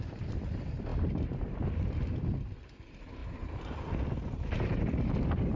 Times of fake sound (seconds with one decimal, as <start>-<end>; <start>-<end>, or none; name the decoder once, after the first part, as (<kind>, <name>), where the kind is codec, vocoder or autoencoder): none